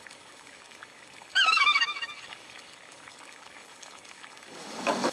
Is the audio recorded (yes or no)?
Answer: no